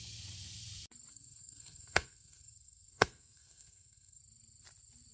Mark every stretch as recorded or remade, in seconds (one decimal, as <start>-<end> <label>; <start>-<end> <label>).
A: 0.0-1.1 recorded; 1.1-4.2 remade; 4.2-5.1 recorded